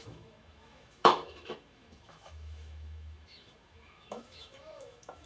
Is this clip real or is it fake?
fake